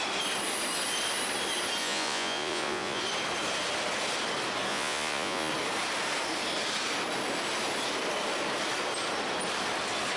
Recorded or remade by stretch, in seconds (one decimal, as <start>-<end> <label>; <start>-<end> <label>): 0.0-1.8 recorded; 1.8-3.0 remade; 3.0-4.7 recorded; 4.7-5.5 remade; 5.5-10.2 recorded